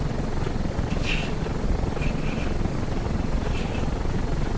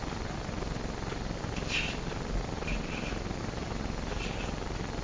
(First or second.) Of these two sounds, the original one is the second